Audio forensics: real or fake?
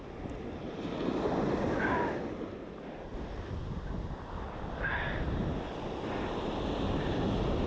real